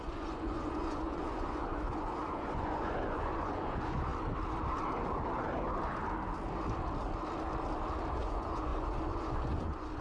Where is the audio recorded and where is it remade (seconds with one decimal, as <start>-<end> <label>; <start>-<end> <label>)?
0.0-4.1 remade; 4.1-8.1 recorded; 8.1-10.0 remade